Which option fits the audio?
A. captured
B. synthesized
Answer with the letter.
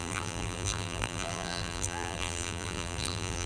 B